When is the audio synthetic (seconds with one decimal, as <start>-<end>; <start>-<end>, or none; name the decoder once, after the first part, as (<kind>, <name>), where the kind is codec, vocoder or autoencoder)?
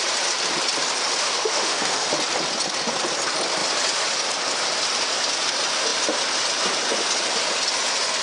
1.2-2.1 (autoencoder, DAC-VAE)